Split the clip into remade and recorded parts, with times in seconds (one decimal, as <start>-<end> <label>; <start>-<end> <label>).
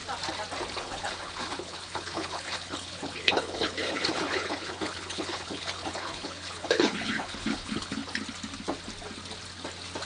0.0-0.7 recorded; 0.7-8.0 remade; 8.0-10.1 recorded